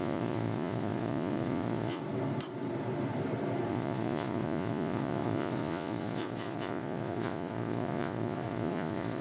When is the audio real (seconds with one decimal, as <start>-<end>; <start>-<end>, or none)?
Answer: 2.0-3.7